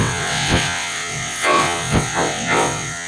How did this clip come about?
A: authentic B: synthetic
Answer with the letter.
B